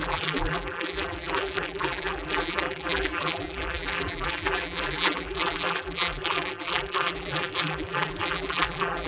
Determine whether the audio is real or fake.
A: fake